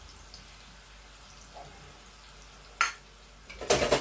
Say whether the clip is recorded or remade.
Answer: recorded